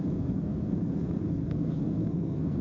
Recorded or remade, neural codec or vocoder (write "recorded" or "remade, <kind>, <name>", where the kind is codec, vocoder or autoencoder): remade, codec, SNAC